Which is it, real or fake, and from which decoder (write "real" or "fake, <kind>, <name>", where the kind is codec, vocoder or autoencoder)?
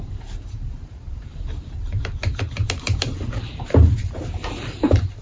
fake, vocoder, BigVGAN v2